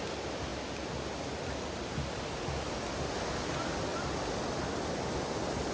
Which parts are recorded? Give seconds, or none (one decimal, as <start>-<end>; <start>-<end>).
0.0-5.7